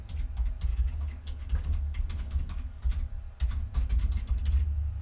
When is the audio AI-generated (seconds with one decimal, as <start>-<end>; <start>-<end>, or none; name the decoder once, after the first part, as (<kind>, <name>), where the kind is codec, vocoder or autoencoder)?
0.7-2.9 (codec, DAC)